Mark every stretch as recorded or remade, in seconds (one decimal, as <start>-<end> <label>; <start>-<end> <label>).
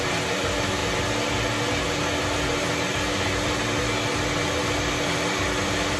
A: 0.0-6.0 recorded